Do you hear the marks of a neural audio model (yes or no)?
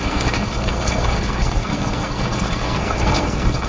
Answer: yes